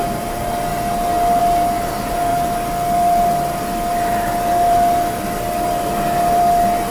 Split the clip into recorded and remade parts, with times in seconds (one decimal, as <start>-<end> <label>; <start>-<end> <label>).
0.0-2.3 recorded; 2.3-6.4 remade; 6.4-6.9 recorded